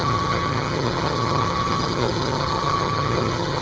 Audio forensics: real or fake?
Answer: fake